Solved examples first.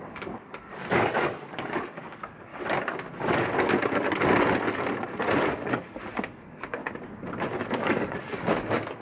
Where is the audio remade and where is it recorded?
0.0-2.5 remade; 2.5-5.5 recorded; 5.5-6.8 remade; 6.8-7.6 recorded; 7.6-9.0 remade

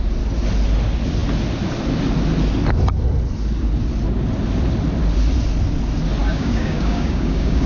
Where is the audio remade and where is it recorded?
0.0-6.2 recorded; 6.2-7.7 remade